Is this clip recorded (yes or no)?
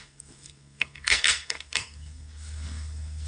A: no